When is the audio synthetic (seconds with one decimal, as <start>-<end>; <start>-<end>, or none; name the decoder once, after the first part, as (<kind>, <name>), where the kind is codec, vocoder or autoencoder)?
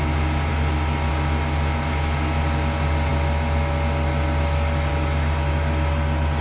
none